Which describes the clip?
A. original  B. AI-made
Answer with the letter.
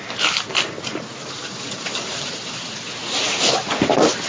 A